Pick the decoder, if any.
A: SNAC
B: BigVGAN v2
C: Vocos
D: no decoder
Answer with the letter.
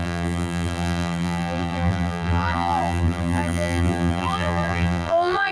B